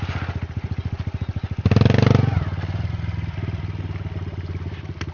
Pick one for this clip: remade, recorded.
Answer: recorded